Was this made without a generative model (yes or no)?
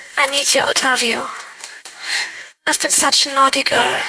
no